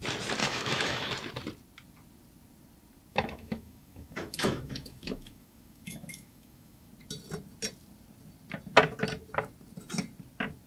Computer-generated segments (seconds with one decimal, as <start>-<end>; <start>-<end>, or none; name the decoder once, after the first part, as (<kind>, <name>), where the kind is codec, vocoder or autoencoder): 0.4-1.1 (autoencoder, DAC-VAE); 3.1-6.9